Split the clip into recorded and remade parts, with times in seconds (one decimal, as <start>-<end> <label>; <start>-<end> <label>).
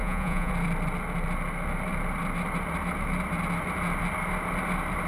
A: 0.0-0.5 remade; 0.5-5.1 recorded